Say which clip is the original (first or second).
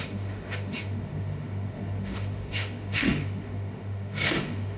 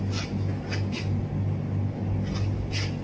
second